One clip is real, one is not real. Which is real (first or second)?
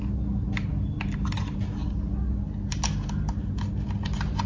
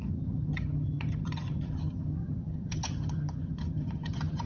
first